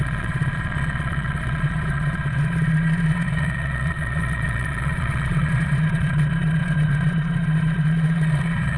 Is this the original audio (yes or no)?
no